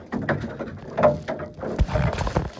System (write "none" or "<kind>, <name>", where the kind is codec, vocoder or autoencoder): none